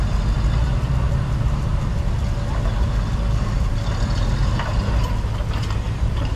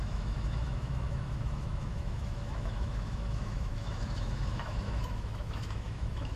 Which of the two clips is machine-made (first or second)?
second